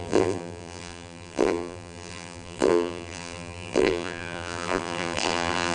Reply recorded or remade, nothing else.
remade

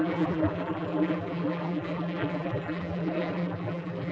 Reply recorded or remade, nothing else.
remade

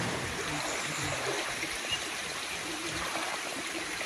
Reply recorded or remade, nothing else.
remade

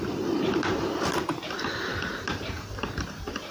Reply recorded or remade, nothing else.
remade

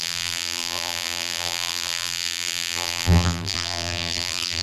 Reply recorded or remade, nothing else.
remade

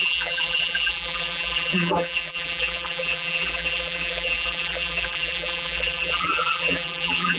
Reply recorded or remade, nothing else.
remade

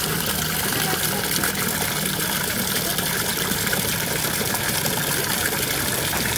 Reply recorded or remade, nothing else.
remade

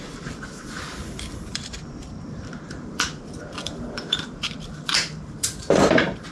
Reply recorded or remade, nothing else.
remade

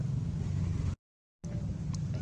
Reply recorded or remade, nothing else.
recorded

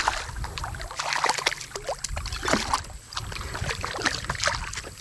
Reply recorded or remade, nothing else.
recorded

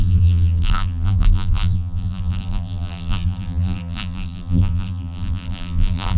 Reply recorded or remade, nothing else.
remade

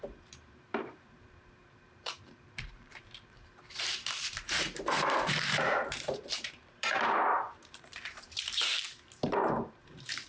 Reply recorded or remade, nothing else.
remade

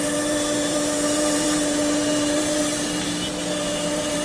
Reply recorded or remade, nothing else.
remade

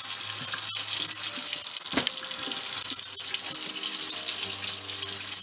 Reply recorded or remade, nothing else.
recorded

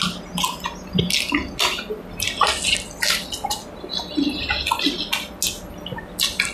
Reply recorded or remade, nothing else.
recorded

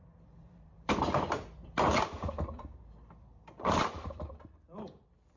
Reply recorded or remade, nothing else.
remade